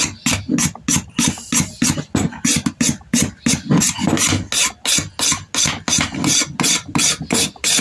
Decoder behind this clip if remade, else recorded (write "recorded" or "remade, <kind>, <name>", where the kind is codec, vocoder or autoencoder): recorded